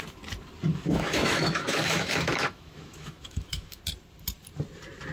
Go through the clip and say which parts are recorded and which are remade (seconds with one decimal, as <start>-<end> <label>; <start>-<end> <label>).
0.0-0.7 recorded; 0.7-3.8 remade; 3.8-5.1 recorded